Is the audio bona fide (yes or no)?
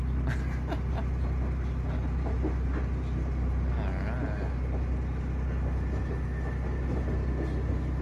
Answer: yes